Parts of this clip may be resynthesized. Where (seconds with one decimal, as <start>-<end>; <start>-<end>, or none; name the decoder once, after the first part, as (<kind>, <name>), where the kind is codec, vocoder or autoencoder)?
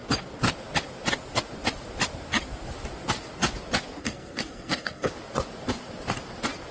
4.0-5.1 (codec, SNAC)